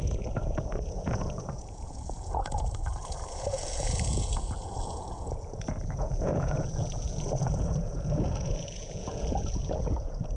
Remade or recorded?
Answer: remade